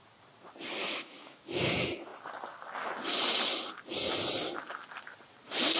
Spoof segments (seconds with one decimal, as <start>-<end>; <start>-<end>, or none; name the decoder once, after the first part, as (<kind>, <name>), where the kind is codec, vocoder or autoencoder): 0.8-1.7 (autoencoder, DAC-VAE)

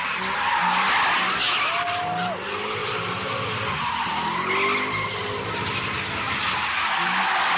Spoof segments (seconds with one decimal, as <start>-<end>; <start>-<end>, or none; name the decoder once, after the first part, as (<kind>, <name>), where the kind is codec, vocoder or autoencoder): none

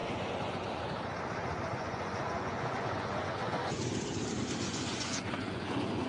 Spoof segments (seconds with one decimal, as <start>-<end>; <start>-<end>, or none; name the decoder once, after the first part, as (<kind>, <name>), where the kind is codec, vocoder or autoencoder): 0.0-0.8 (vocoder, Vocos); 1.7-3.9; 4.6-6.1

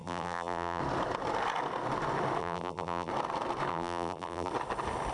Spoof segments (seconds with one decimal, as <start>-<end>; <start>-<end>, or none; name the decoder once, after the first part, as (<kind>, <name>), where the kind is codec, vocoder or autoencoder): 0.0-0.8 (vocoder, BigVGAN v2); 2.4-3.1; 3.7-4.5

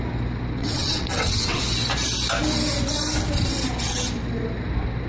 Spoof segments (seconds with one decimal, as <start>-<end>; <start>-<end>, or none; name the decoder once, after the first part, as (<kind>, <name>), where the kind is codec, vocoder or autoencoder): 0.6-1.6 (vocoder, WaveNeXt)

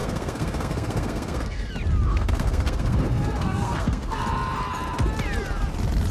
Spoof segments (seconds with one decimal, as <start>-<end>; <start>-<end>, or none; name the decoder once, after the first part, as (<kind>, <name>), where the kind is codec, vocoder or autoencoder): 0.0-1.7 (codec, SNAC); 2.1-4.2

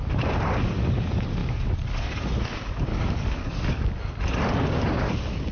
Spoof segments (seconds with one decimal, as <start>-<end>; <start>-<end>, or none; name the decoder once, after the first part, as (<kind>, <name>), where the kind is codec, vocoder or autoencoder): 1.4-2.3 (codec, DAC); 2.9-3.9